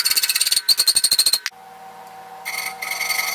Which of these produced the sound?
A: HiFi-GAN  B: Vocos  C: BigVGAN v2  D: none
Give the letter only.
D